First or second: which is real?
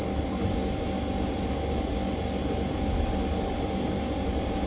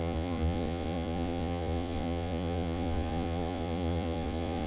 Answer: first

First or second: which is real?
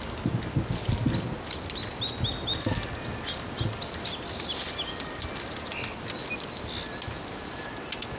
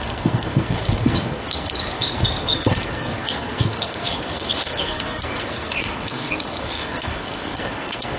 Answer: first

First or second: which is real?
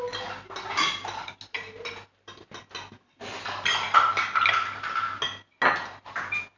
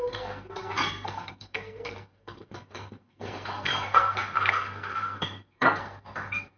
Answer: first